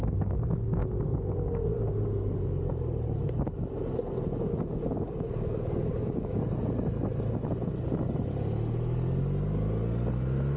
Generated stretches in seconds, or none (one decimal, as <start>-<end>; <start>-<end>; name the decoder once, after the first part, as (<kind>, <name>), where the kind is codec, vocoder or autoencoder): 0.0-0.8 (codec, DAC); 4.4-6.4